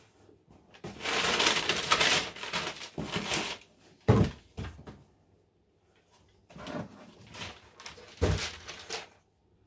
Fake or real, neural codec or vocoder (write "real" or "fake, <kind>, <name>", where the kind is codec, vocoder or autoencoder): real